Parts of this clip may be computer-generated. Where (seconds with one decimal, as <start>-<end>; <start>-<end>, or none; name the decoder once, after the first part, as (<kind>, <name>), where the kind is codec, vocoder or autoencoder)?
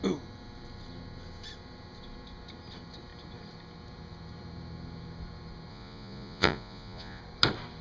5.7-7.2 (vocoder, Vocos)